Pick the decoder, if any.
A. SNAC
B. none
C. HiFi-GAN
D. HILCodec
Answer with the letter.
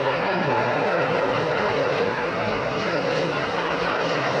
A